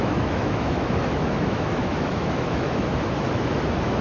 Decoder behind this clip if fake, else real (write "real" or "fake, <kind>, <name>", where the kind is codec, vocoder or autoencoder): fake, autoencoder, DAC-VAE